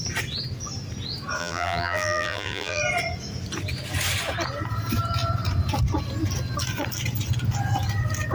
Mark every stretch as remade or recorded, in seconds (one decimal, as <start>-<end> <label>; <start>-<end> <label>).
0.0-1.4 recorded; 1.4-2.8 remade; 2.8-8.3 recorded